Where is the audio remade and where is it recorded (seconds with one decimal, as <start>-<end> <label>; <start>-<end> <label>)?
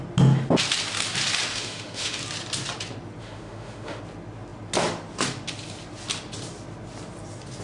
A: 0.0-1.5 recorded; 1.5-2.2 remade; 2.2-3.2 recorded; 3.2-4.0 remade; 4.0-7.6 recorded